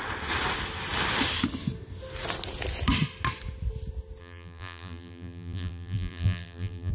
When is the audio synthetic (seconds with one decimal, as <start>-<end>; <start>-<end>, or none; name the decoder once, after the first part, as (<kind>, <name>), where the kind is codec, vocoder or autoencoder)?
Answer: 4.2-6.9 (vocoder, BigVGAN v2)